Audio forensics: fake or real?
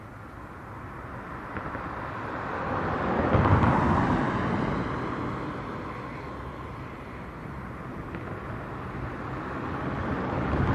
real